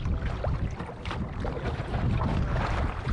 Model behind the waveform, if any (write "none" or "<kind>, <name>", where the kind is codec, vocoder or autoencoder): none